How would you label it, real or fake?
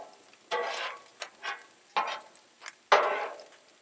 real